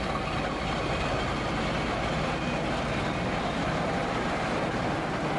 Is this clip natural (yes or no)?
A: yes